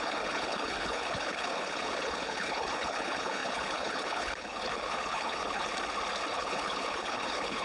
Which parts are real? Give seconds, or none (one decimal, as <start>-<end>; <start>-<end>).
5.7-6.3